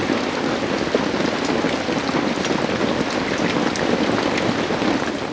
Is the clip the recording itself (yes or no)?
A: yes